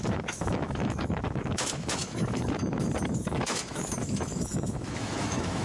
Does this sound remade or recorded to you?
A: remade